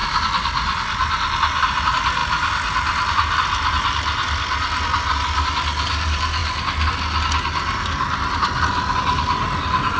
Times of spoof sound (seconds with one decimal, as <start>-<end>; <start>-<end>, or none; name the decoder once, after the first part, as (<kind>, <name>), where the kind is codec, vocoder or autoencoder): none